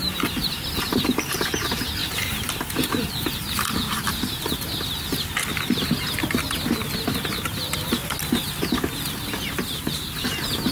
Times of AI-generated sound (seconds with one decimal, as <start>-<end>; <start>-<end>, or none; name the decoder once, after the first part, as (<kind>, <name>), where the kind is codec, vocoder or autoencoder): 2.0-2.5 (vocoder, BigVGAN v2)